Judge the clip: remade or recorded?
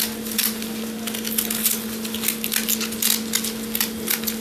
recorded